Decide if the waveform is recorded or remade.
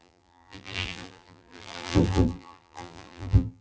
remade